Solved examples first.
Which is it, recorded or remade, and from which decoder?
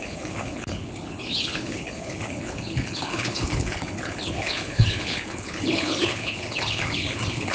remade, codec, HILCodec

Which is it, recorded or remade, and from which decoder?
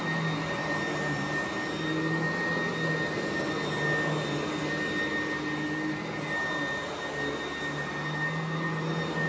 recorded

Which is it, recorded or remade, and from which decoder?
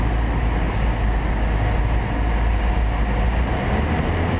recorded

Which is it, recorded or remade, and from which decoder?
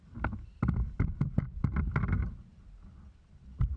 recorded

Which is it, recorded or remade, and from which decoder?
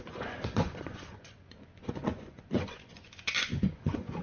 remade, vocoder, Vocos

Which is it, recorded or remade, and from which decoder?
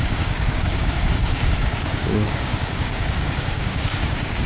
remade, codec, DAC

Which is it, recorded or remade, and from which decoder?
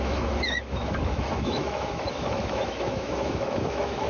remade, autoencoder, DAC-VAE